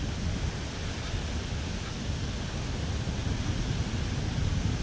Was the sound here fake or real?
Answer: real